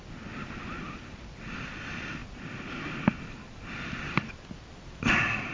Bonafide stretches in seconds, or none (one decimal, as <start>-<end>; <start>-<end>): 0.0-5.5